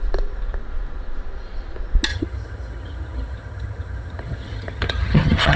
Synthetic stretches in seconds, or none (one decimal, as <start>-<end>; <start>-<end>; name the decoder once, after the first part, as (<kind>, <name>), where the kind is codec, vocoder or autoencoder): 2.1-5.6 (vocoder, HiFi-GAN)